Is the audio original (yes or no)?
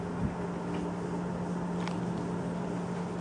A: yes